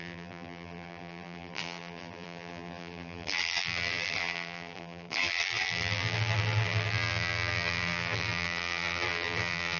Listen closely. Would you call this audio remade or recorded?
remade